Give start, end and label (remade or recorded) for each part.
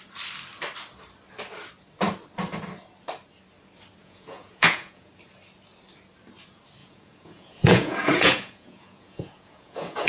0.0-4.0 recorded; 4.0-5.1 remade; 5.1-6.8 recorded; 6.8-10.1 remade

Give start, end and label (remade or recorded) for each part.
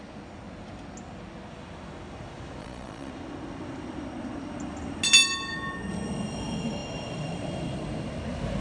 0.0-2.6 recorded; 2.6-3.1 remade; 3.1-8.6 recorded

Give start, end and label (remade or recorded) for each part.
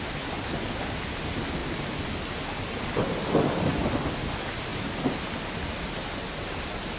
0.0-7.0 recorded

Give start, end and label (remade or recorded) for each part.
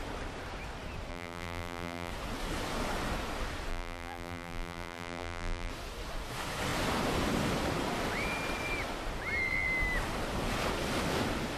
0.0-1.1 recorded; 1.1-2.1 remade; 2.1-3.7 recorded; 3.7-5.7 remade; 5.7-11.6 recorded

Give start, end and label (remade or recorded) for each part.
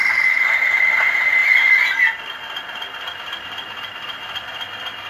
0.0-0.9 remade; 0.9-1.4 recorded; 1.4-2.3 remade; 2.3-5.1 recorded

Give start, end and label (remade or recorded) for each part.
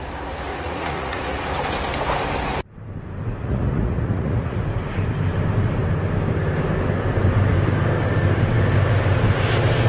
0.0-0.5 recorded; 0.5-1.4 remade; 1.4-3.4 recorded; 3.4-4.6 remade; 4.6-9.9 recorded